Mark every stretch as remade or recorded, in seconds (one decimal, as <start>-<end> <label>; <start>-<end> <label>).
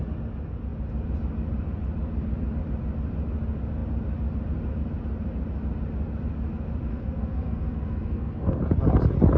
0.0-6.9 recorded; 6.9-8.6 remade; 8.6-9.4 recorded